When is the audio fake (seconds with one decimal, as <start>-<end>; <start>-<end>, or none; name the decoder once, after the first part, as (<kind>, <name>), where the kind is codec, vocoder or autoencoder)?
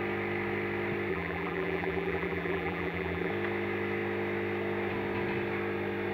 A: 1.1-3.3 (vocoder, BigVGAN v2)